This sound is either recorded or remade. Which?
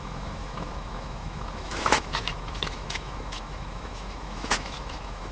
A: remade